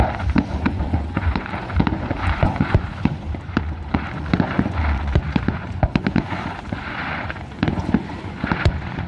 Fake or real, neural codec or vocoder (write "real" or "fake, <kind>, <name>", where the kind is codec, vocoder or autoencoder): fake, vocoder, Vocos